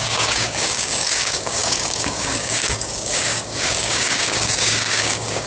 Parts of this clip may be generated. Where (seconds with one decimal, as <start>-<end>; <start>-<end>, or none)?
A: 0.0-5.5